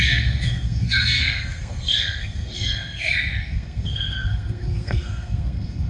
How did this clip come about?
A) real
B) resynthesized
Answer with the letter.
B